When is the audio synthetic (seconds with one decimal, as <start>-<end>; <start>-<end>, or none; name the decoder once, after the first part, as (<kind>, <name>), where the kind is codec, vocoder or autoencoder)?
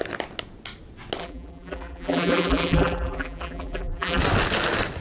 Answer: 1.2-4.2 (vocoder, BigVGAN v2)